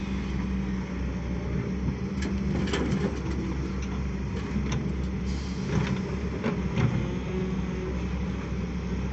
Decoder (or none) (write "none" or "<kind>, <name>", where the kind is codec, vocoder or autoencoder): none